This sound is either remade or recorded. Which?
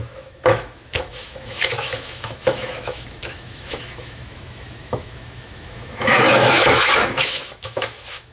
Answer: remade